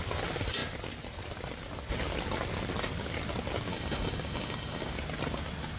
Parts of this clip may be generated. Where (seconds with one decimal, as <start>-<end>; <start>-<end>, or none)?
3.7-4.9